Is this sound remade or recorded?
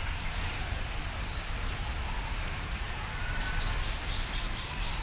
recorded